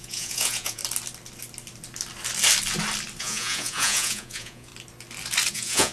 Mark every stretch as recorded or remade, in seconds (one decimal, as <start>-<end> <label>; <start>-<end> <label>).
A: 0.0-0.8 remade; 0.8-3.2 recorded; 3.2-4.7 remade; 4.7-5.5 recorded; 5.5-5.9 remade